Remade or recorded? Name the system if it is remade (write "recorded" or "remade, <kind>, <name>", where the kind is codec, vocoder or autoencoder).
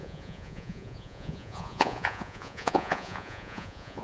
remade, vocoder, Vocos